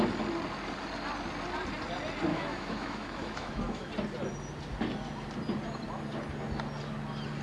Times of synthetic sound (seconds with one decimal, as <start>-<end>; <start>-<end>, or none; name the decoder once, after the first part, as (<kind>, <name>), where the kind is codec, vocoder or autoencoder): 2.3-3.9 (autoencoder, DAC-VAE)